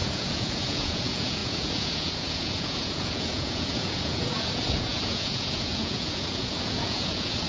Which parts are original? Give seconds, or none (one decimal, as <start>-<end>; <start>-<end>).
none